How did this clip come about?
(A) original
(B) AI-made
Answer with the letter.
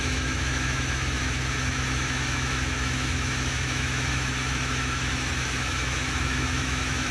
B